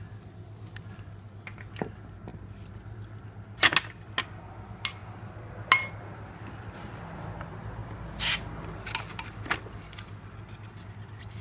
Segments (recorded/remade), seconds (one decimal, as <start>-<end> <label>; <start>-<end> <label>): 0.0-11.4 recorded